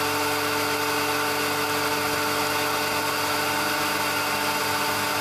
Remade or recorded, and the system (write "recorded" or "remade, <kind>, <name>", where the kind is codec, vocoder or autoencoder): recorded